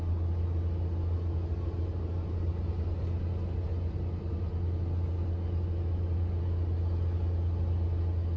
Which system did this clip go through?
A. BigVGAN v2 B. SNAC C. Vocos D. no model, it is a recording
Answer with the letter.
D